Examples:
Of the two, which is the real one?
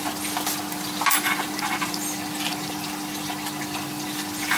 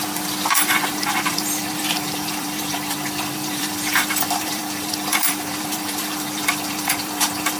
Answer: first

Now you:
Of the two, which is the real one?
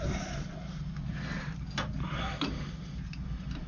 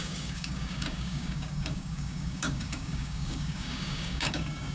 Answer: first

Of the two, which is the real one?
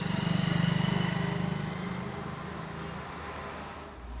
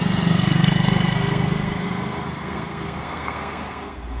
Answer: first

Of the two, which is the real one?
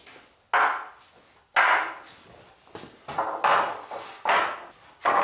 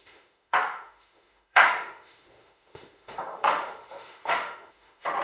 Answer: first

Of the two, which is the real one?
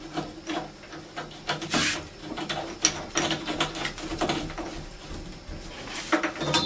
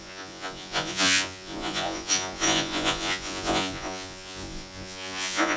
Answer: first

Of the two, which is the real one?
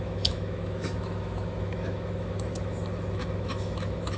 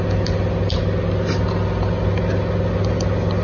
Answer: second